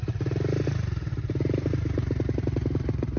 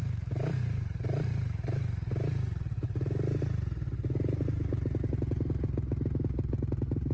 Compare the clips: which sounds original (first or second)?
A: second